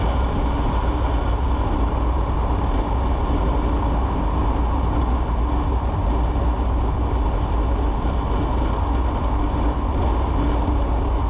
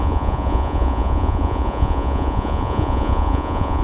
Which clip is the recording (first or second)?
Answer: first